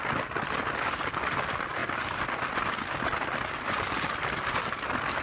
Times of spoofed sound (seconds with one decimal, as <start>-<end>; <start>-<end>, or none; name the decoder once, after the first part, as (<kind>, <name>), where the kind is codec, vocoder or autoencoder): none